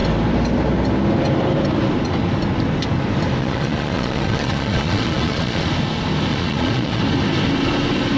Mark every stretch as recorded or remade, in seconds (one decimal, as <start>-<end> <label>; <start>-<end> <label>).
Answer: 0.0-3.4 recorded; 3.4-5.7 remade; 5.7-6.3 recorded; 6.3-7.0 remade; 7.0-8.2 recorded